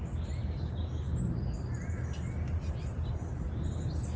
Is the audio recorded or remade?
recorded